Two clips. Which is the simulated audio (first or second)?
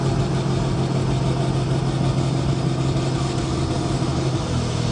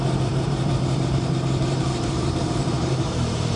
second